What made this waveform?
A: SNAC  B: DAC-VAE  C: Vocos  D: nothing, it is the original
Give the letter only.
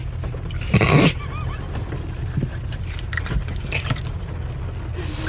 D